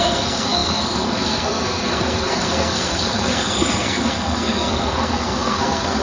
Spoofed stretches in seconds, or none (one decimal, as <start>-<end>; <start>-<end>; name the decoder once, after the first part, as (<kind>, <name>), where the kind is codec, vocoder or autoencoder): 0.0-6.0 (codec, SNAC)